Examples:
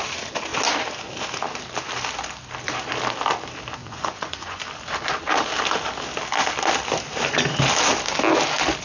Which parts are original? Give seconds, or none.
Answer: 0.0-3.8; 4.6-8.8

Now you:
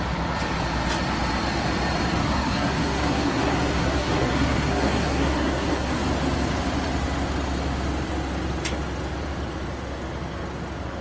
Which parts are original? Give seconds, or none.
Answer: 0.0-2.2; 5.9-11.0